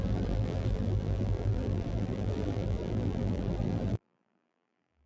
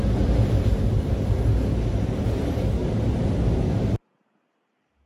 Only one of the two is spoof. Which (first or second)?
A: first